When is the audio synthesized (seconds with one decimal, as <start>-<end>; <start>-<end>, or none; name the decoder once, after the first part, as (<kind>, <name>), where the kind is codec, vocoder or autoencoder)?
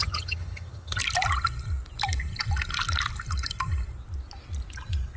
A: 0.0-1.0 (vocoder, HiFi-GAN)